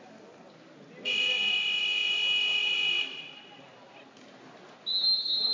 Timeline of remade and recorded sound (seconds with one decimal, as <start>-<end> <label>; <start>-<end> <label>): 0.0-5.5 recorded